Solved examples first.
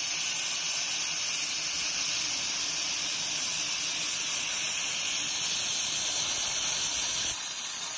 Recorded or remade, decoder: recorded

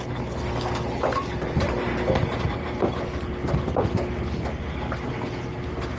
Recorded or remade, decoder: recorded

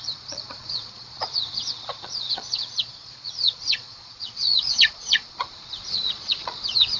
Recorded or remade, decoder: remade, vocoder, Vocos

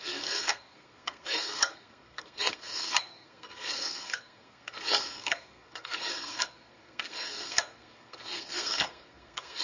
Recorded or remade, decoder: remade, codec, SNAC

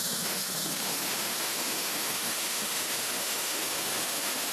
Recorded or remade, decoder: remade, autoencoder, DAC-VAE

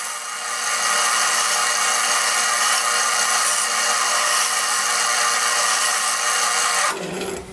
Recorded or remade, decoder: recorded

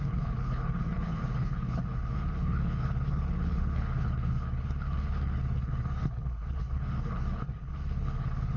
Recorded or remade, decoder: remade, codec, HILCodec